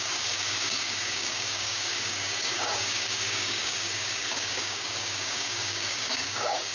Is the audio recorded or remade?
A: remade